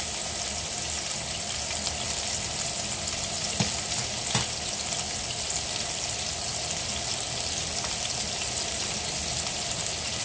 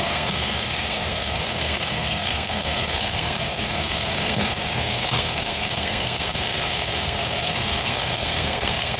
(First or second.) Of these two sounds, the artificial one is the second